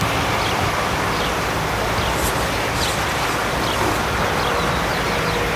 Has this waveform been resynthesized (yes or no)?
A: no